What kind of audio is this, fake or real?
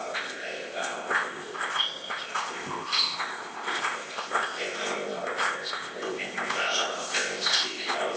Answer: fake